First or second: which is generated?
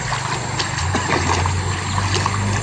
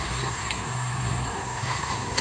second